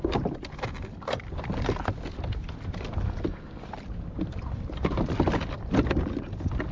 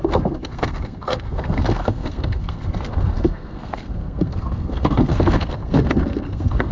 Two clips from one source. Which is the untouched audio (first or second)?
first